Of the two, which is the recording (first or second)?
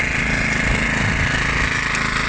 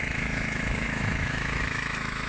first